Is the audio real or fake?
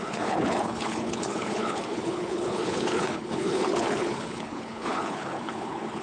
fake